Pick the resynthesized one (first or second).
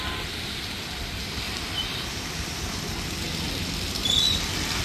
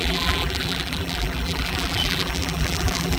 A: second